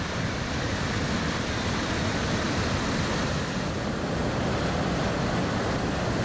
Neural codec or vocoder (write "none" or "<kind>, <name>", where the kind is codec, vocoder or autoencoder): none